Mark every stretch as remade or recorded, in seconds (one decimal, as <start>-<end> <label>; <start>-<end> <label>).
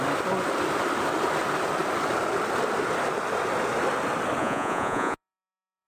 0.0-4.4 recorded; 4.4-5.9 remade